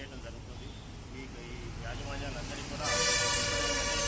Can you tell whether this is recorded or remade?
recorded